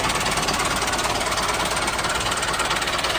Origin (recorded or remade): recorded